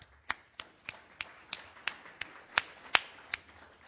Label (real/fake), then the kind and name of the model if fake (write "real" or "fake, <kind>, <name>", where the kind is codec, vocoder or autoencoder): real